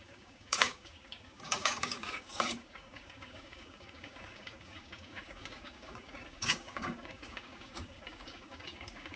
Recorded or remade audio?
remade